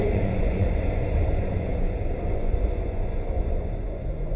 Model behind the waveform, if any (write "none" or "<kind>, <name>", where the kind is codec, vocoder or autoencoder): vocoder, Vocos